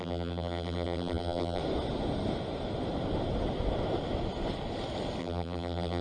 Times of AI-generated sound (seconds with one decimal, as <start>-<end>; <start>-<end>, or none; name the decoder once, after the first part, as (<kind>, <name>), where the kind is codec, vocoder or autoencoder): 0.0-1.6 (vocoder, BigVGAN v2); 5.2-6.0